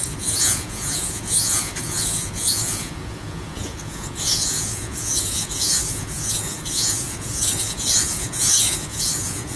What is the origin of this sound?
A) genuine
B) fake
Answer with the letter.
B